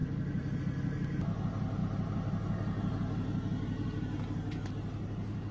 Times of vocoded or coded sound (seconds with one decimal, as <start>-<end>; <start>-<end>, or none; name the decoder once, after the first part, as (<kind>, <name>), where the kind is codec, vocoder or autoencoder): none